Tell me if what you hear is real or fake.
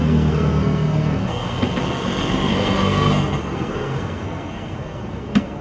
fake